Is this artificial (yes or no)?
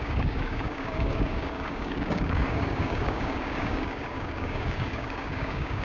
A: yes